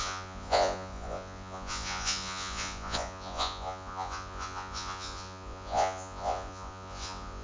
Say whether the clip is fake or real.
fake